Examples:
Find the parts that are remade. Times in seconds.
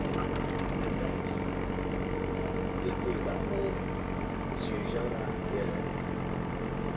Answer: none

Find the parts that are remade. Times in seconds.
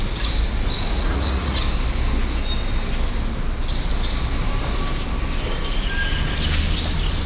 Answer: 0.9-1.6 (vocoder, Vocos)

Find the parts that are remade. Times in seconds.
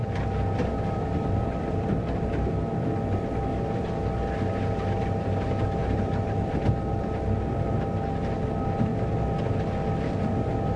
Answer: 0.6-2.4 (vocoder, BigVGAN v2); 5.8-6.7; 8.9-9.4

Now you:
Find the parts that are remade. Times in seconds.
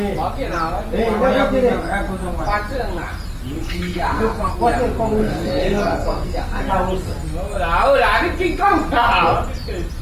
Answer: 3.6-4.5 (codec, SNAC); 5.2-6.6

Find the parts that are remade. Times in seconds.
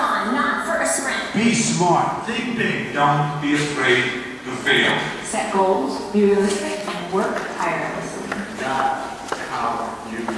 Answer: 5.6-7.0 (codec, SNAC)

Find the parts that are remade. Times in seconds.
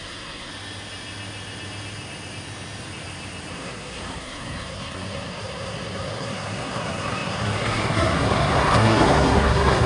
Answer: 0.0-0.5 (codec, SNAC); 3.5-9.9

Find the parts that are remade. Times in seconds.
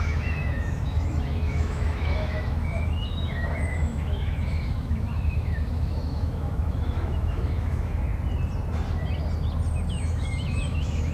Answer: 0.0-8.1 (autoencoder, DAC-VAE); 9.9-11.1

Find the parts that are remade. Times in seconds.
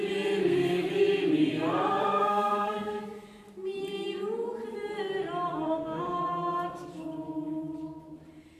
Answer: 0.4-0.9 (codec, SNAC); 2.0-3.0; 5.5-6.2